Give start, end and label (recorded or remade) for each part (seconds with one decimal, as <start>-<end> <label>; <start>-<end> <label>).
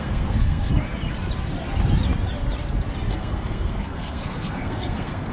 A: 0.0-0.7 remade; 0.7-3.1 recorded; 3.1-5.3 remade